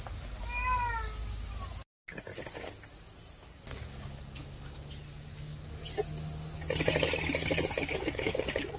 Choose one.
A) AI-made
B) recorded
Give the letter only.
B